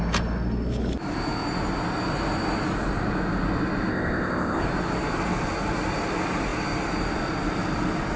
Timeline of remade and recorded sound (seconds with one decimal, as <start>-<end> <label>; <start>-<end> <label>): 0.0-3.9 recorded; 3.9-4.6 remade; 4.6-8.2 recorded